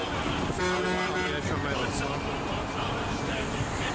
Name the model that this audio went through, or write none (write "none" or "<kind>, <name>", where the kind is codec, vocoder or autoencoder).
none